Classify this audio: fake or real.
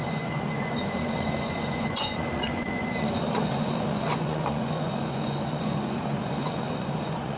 fake